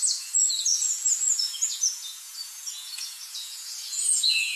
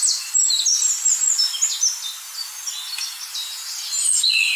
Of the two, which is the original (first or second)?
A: second